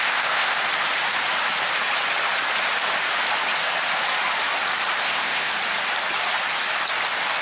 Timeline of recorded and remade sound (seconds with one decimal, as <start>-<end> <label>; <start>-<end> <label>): 0.0-0.6 remade; 0.6-5.0 recorded; 5.0-5.5 remade; 5.5-7.4 recorded